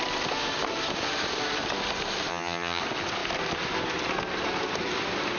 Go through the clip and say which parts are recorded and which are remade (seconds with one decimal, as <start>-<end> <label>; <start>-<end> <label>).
0.0-2.3 recorded; 2.3-2.8 remade; 2.8-5.4 recorded